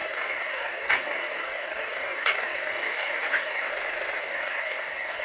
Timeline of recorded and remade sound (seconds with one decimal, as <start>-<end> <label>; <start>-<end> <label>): 0.0-3.7 remade; 3.7-4.2 recorded; 4.2-5.2 remade